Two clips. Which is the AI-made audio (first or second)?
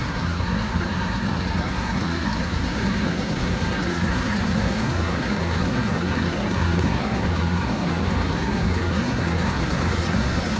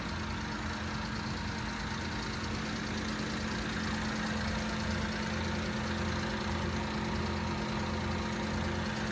first